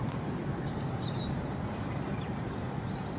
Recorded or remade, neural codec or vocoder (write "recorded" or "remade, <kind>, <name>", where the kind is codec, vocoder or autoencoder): recorded